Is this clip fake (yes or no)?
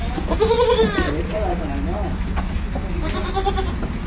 no